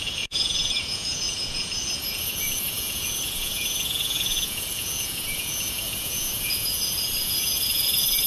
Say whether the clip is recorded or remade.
remade